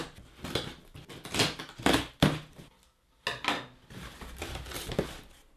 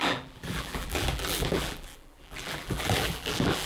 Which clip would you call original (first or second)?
first